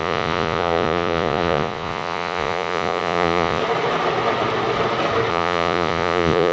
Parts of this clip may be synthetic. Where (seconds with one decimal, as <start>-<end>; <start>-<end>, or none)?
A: 0.0-3.6; 5.3-6.5